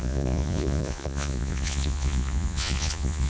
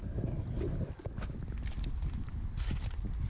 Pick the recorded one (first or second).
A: second